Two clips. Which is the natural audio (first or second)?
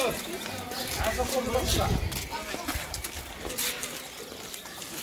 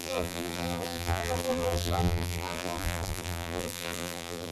first